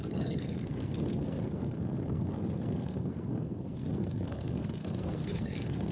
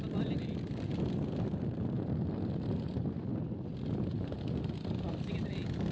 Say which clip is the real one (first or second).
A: second